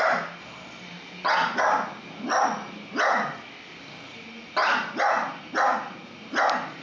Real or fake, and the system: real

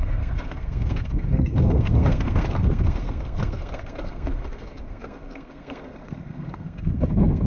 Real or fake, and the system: fake, codec, SNAC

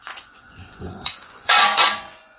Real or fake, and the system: fake, vocoder, Vocos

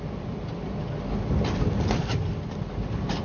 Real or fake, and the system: real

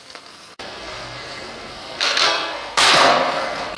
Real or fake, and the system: fake, codec, SNAC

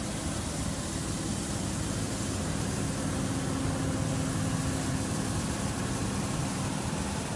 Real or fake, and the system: real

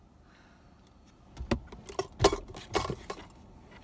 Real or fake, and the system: real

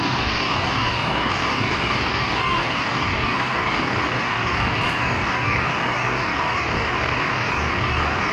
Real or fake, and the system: fake, codec, DAC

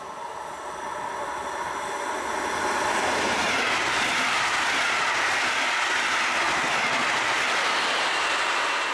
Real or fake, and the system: real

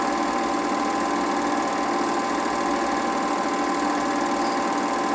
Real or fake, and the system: real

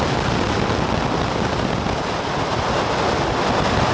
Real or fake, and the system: real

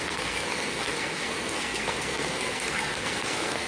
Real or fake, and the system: fake, codec, SNAC